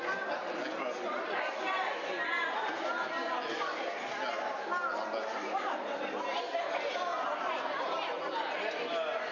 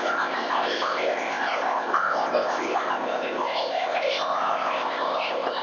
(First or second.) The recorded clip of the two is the first